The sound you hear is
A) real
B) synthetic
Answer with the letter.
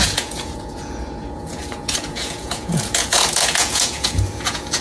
B